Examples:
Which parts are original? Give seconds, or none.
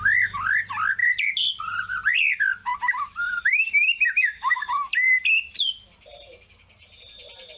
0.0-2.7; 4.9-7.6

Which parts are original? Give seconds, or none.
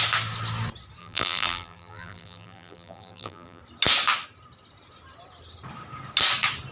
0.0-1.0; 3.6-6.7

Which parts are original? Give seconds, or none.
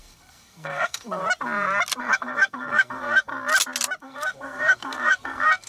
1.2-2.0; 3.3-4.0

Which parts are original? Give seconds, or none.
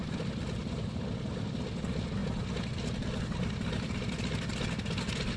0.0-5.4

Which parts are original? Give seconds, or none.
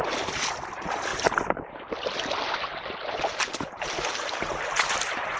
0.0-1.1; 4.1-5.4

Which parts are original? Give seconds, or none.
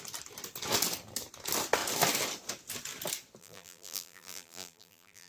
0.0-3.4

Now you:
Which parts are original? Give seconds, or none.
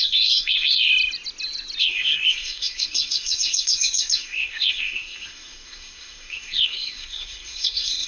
0.9-1.8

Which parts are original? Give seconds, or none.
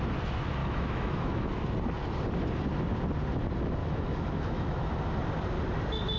0.0-0.6; 1.5-3.8; 4.9-6.2